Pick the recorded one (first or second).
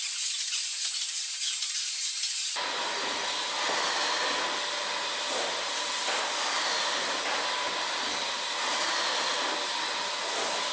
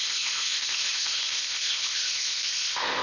first